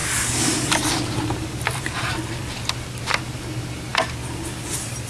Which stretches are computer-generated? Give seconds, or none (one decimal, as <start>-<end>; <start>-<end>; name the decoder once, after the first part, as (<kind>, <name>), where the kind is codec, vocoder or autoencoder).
none